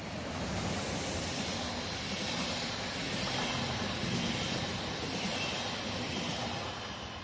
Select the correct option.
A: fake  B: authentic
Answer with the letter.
B